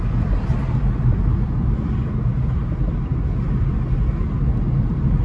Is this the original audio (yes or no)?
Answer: yes